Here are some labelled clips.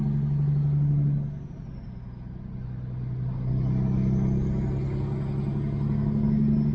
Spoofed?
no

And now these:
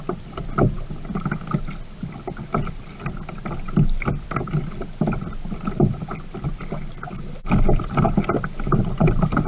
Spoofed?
no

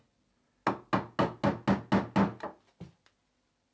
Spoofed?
no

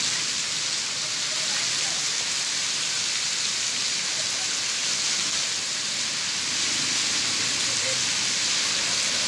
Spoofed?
no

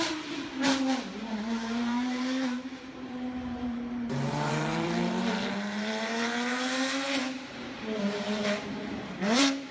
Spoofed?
yes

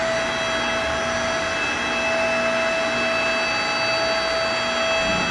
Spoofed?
no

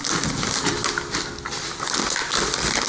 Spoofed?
no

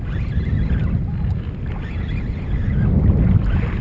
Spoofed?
no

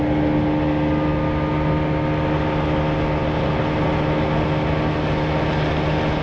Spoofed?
no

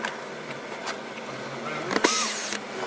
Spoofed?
no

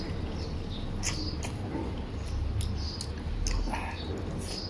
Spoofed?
no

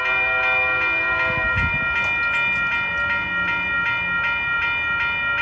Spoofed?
no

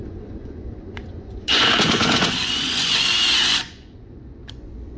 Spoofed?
yes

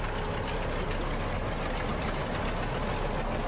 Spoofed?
no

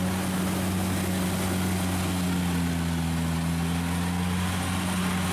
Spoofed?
no